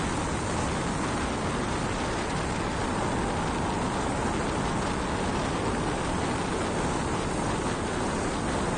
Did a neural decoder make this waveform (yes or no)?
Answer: no